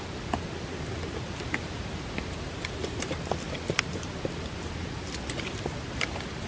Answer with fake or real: real